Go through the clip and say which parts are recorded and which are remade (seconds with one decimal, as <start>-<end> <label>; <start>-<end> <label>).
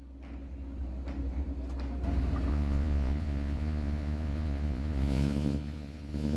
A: 0.0-2.5 recorded; 2.5-6.4 remade